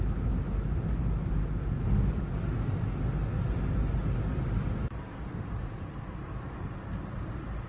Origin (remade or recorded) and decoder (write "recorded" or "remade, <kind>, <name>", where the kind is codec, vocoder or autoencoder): recorded